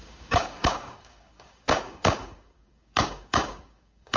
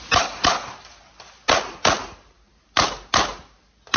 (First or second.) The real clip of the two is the second